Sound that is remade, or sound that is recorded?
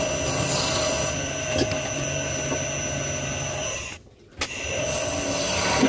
recorded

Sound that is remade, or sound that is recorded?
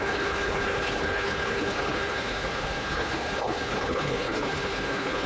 remade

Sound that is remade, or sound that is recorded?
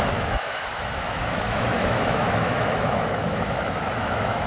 remade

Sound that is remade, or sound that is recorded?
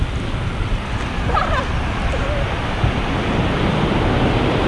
recorded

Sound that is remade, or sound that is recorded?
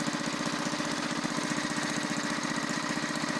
recorded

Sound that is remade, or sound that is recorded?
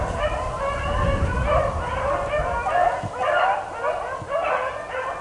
recorded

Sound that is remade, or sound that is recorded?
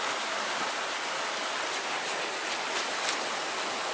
recorded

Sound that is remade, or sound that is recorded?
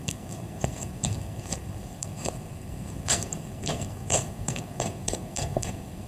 remade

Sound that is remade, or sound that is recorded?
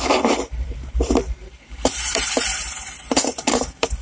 remade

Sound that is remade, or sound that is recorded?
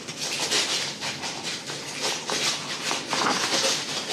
recorded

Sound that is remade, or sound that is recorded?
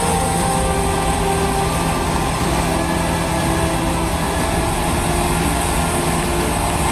recorded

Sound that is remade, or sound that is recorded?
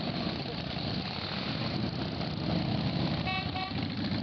recorded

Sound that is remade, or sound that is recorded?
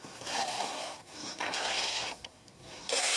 remade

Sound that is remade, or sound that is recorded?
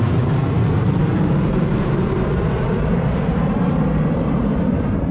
remade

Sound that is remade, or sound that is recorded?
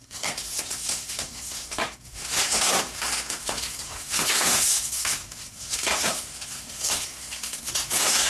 remade